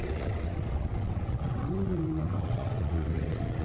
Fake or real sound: fake